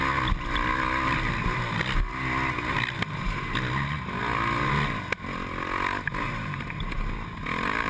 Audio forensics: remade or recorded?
recorded